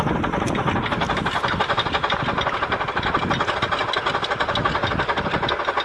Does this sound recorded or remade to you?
recorded